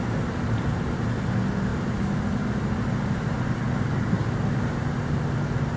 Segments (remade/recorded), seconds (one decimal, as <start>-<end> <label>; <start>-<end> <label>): 0.0-5.8 recorded